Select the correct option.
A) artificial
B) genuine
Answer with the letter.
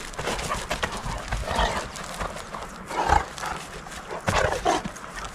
B